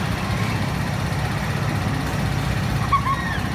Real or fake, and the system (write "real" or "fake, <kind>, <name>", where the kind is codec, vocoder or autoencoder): real